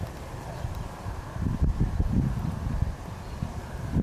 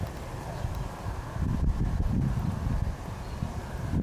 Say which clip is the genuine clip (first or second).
second